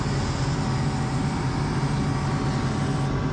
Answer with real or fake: real